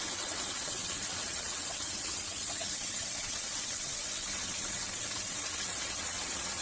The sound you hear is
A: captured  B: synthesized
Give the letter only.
B